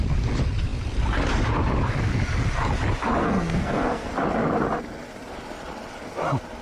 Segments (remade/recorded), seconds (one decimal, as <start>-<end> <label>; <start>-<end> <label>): 0.0-3.2 recorded; 3.2-4.1 remade; 4.1-6.6 recorded